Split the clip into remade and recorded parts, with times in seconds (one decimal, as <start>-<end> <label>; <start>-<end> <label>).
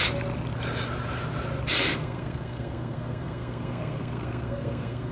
0.0-1.9 recorded; 1.9-5.1 remade